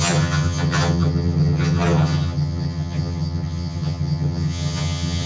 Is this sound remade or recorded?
remade